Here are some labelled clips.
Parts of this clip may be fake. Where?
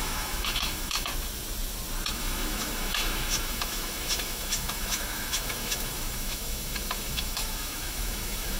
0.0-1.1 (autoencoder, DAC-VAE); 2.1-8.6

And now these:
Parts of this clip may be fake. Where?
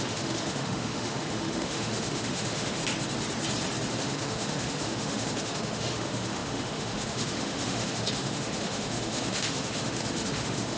0.0-2.8 (autoencoder, DAC-VAE); 3.9-10.8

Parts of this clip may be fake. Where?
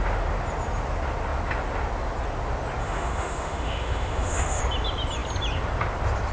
2.8-4.6 (autoencoder, DAC-VAE)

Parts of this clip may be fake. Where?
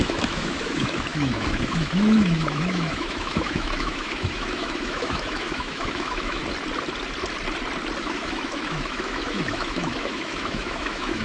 0.0-6.4 (autoencoder, DAC-VAE); 8.0-11.2